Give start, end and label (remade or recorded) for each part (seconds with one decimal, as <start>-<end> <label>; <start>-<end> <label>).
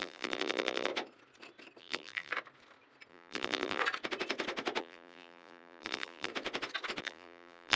0.0-0.9 remade; 0.9-1.8 recorded; 1.8-2.3 remade; 2.3-3.1 recorded; 3.1-3.8 remade; 3.8-4.8 recorded; 4.8-6.3 remade; 6.3-7.0 recorded; 7.0-7.8 remade